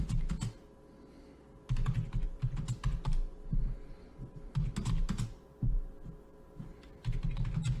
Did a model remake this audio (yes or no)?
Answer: no